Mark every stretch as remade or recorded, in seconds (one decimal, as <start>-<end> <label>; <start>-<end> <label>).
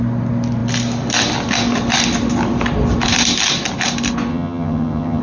0.0-4.3 recorded; 4.3-5.2 remade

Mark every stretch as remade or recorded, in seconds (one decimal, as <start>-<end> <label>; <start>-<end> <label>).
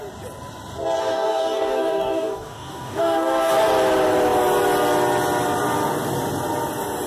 0.0-1.0 recorded; 1.0-3.5 remade; 3.5-7.1 recorded